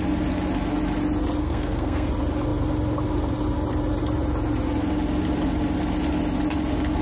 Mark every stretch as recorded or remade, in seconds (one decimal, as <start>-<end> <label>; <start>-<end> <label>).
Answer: 0.0-1.4 recorded; 1.4-2.1 remade; 2.1-7.0 recorded